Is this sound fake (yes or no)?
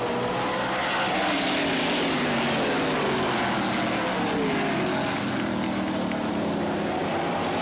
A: no